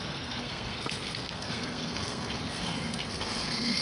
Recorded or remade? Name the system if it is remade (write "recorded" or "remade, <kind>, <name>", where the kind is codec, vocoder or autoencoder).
remade, codec, SNAC